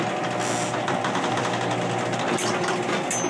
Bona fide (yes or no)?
yes